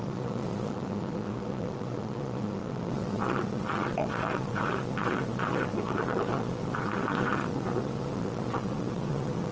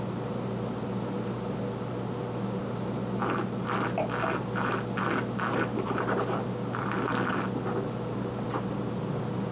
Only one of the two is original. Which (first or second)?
second